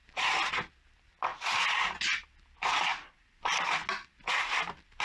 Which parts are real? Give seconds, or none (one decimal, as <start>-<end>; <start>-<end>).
0.0-5.0